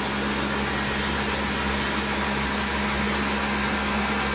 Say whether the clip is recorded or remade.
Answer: recorded